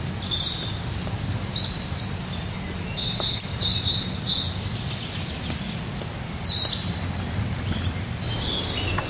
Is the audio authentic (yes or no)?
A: yes